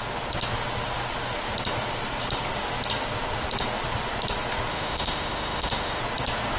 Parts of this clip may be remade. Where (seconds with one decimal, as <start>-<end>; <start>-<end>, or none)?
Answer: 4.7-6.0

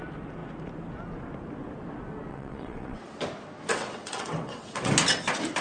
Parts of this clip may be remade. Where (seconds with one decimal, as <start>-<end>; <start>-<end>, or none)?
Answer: 2.3-3.0; 3.7-4.9

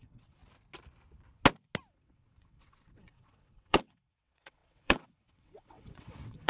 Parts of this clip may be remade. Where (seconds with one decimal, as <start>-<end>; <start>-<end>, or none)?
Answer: 0.0-0.4; 1.9-6.5